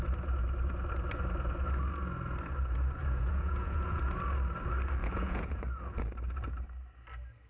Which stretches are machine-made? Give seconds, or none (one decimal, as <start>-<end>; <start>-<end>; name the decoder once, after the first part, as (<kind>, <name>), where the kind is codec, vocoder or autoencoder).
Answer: 3.0-4.0 (vocoder, Vocos); 5.0-5.6